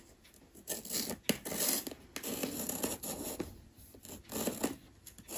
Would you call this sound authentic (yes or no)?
yes